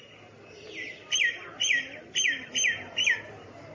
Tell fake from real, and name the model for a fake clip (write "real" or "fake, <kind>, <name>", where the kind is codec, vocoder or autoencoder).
real